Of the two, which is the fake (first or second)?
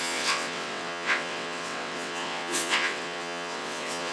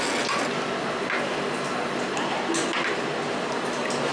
first